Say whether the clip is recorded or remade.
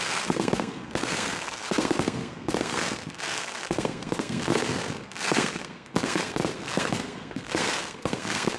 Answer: remade